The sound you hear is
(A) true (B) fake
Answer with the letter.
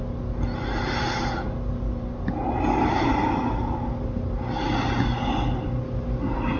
A